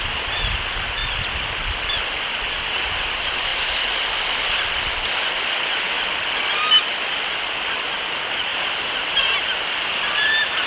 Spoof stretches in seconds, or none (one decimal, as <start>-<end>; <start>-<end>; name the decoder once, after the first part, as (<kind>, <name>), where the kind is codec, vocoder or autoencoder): 0.0-1.0 (vocoder, BigVGAN v2); 2.6-3.5; 8.0-10.7